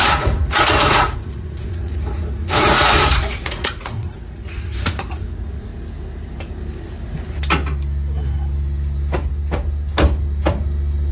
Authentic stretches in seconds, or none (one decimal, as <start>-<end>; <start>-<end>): 5.7-11.1

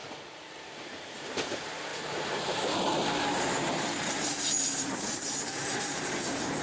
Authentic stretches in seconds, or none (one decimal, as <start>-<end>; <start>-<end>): 0.0-0.5

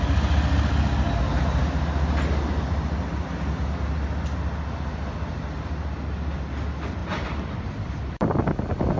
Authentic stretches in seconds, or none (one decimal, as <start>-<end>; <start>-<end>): 0.0-7.0; 8.6-9.0

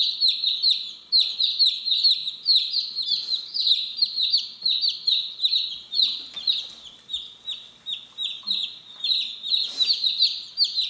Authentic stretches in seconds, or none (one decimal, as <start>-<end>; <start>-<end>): 0.0-3.3; 4.3-10.9

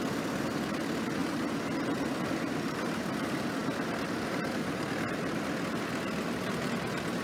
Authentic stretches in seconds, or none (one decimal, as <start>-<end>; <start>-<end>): 0.0-7.2

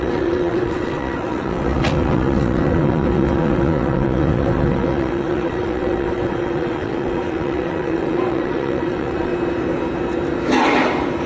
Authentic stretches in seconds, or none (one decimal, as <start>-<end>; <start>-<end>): 9.3-11.3

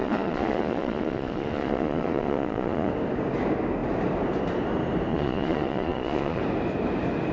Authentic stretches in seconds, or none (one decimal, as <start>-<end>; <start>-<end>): 2.9-5.1; 6.4-7.3